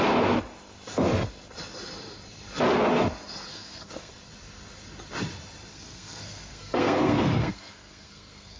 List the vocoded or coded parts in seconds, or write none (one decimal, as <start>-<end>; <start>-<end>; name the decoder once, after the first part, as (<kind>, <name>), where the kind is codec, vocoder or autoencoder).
3.5-4.1 (codec, SNAC); 5.7-8.6